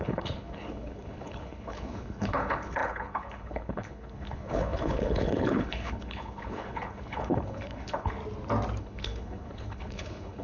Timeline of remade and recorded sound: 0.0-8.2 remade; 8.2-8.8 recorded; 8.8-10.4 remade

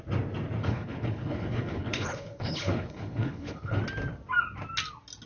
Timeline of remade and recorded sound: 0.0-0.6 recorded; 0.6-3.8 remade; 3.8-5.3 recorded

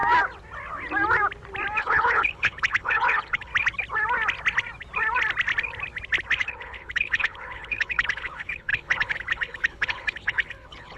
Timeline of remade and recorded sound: 0.0-1.8 recorded; 1.8-3.5 remade; 3.5-6.4 recorded; 6.4-11.0 remade

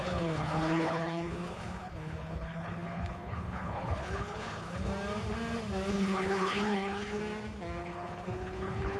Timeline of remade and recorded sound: 0.0-4.9 remade; 4.9-5.9 recorded; 5.9-7.2 remade; 7.2-7.8 recorded; 7.8-9.0 remade

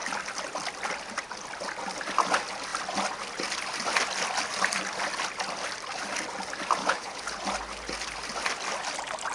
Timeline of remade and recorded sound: 0.0-6.8 recorded; 6.8-7.4 remade; 7.4-9.3 recorded